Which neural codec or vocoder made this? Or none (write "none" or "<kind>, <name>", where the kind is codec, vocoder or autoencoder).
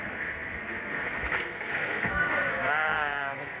codec, SNAC